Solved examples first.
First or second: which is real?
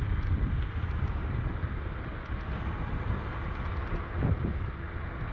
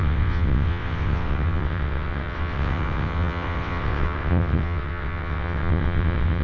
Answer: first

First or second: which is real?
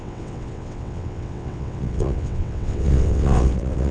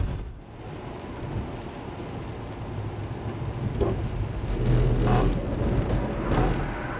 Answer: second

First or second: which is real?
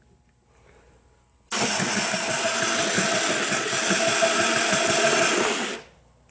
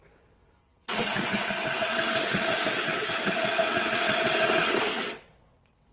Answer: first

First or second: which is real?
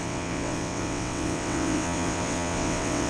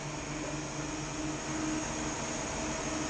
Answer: second